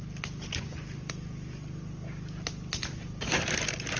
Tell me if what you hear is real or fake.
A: real